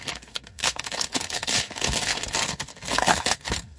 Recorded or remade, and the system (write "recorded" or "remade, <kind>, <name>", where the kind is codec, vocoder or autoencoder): remade, codec, SNAC